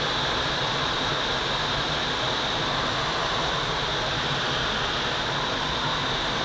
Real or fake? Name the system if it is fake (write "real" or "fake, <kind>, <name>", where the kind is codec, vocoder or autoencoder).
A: real